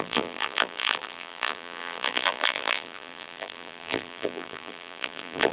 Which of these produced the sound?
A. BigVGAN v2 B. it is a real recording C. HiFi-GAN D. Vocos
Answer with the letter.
A